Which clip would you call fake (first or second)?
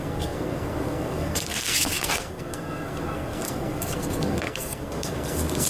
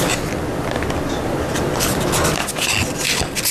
first